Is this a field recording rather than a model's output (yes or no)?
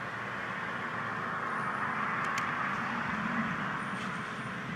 yes